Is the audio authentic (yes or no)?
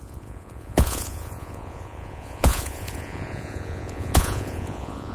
no